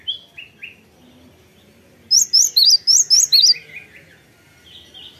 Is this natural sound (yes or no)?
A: yes